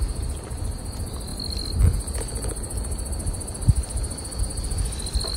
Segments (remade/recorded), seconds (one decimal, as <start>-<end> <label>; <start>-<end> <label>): 0.0-5.4 recorded